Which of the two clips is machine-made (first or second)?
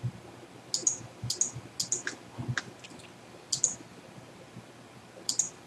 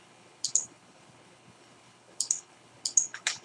second